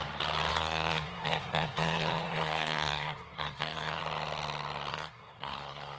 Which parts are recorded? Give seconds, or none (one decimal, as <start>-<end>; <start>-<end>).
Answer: 0.0-0.5; 4.0-4.9